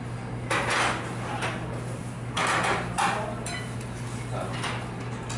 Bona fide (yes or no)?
yes